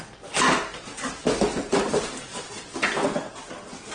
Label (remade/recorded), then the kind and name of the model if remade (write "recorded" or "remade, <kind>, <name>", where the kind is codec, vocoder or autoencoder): recorded